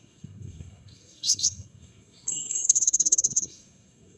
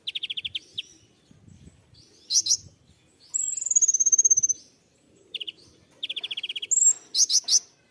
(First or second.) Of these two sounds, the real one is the second